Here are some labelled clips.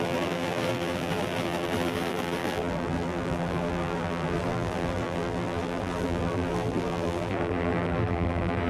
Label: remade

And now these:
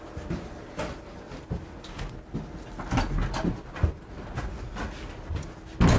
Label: recorded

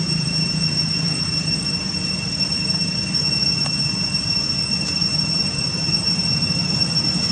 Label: remade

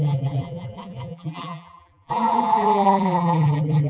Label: remade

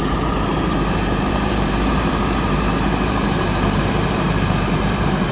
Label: remade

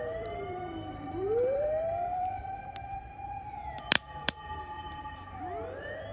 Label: remade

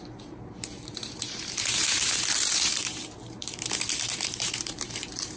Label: remade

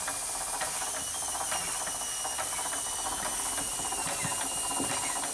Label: recorded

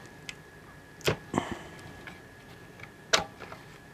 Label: recorded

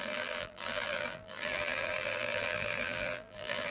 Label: remade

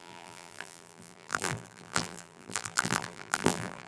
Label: remade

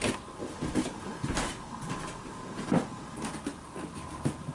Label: recorded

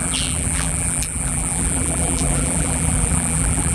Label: remade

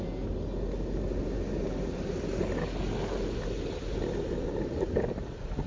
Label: recorded